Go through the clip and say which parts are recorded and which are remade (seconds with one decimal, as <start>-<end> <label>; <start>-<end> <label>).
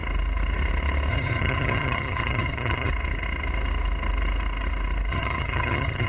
0.0-1.1 recorded; 1.1-2.9 remade; 2.9-5.1 recorded; 5.1-6.1 remade